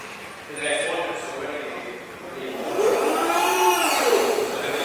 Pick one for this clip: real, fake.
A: fake